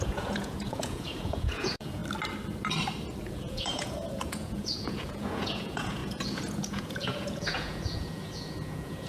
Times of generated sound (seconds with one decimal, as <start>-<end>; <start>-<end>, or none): 0.0-2.0; 3.2-9.1